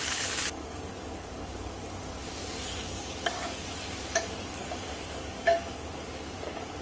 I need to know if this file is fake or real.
fake